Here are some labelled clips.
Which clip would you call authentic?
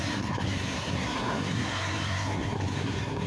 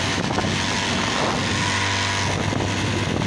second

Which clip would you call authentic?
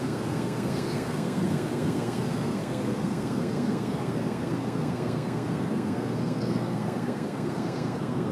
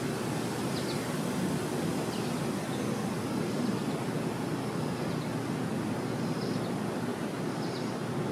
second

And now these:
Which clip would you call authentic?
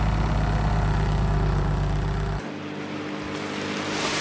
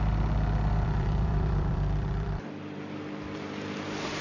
first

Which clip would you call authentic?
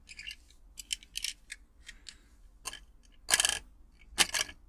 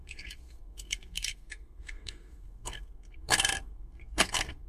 first